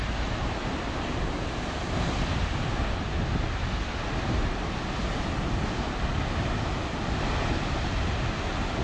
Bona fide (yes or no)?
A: yes